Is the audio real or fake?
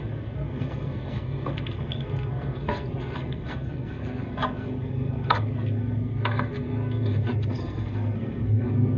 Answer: fake